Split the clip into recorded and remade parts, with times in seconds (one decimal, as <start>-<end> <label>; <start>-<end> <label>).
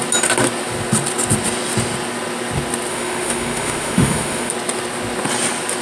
0.0-2.9 recorded; 2.9-4.5 remade; 4.5-5.8 recorded